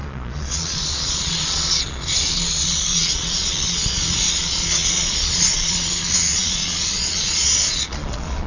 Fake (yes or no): yes